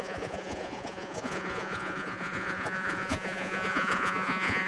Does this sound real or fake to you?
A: fake